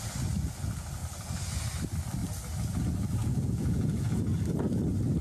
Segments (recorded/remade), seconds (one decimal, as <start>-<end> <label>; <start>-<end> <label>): 0.0-3.2 recorded; 3.2-4.2 remade; 4.2-5.2 recorded